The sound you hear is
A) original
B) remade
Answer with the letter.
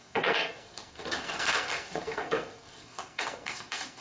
B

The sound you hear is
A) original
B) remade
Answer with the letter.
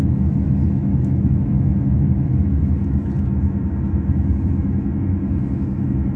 B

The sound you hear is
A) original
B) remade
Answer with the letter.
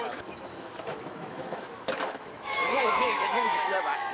B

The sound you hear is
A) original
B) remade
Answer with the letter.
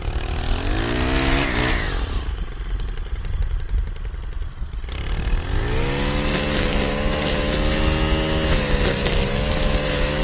A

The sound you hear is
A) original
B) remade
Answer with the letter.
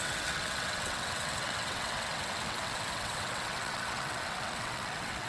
B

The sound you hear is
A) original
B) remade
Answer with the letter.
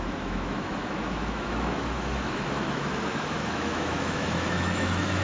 B